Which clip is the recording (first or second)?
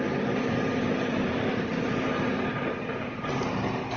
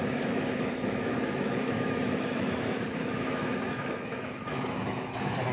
first